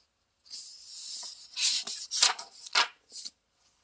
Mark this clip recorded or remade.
recorded